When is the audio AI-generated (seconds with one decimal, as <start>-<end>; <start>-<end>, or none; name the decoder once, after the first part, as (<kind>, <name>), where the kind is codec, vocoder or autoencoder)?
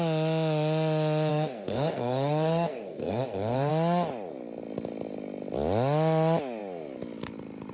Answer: 1.3-3.7 (codec, SNAC)